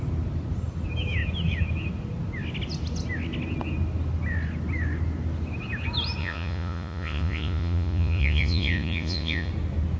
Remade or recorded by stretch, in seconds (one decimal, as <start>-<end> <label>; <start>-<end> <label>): 0.0-6.2 recorded; 6.2-9.5 remade; 9.5-10.0 recorded